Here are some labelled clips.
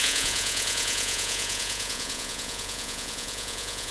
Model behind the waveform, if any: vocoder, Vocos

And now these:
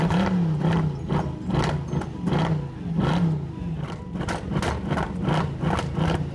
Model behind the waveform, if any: none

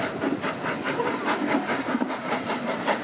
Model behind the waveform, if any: none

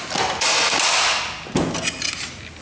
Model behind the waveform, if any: none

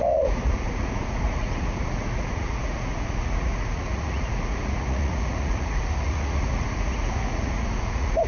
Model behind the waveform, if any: vocoder, Vocos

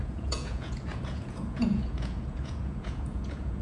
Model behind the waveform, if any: vocoder, Vocos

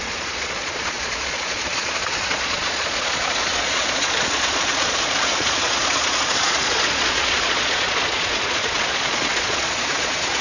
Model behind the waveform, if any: vocoder, Vocos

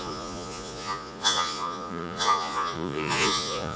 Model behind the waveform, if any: vocoder, Vocos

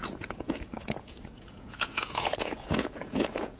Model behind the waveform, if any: vocoder, Vocos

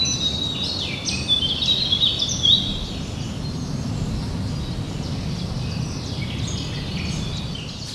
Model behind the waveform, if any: none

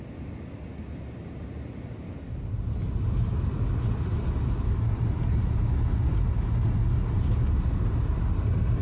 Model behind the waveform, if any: none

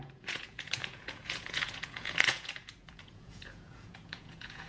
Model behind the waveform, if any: vocoder, Vocos